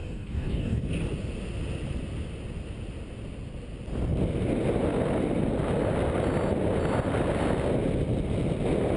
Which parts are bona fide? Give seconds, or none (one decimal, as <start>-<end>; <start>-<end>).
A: 0.8-9.0